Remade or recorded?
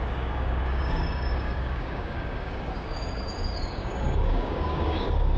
remade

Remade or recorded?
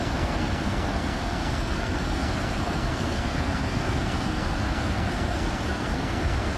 remade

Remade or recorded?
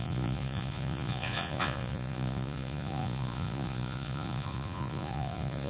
remade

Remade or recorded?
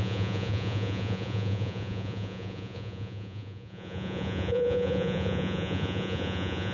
remade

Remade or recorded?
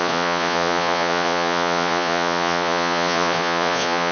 remade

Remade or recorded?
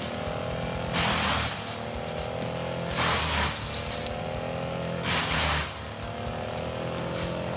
recorded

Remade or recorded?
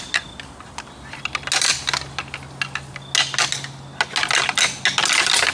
recorded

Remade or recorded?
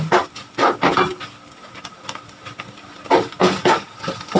recorded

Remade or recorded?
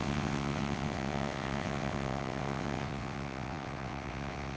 remade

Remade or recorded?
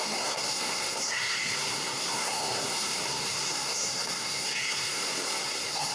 remade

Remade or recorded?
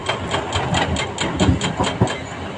recorded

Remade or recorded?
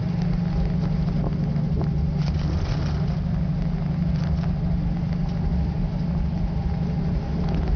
recorded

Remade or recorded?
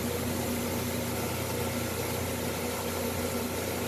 recorded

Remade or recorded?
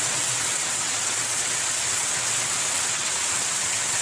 remade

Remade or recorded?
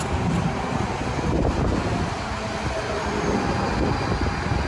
recorded